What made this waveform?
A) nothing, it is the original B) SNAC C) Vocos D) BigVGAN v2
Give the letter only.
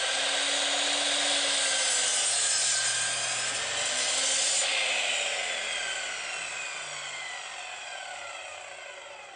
A